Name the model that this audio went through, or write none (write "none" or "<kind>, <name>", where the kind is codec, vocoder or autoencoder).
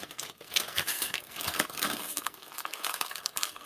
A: codec, SNAC